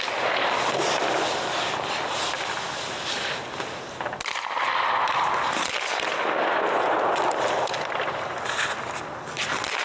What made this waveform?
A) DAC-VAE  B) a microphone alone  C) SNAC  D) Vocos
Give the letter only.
B